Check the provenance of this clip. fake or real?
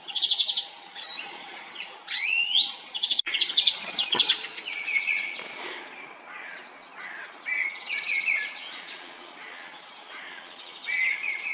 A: fake